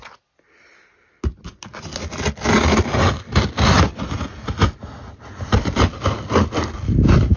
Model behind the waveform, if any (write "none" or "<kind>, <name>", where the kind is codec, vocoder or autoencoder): none